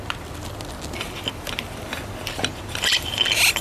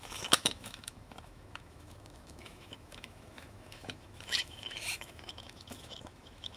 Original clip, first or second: first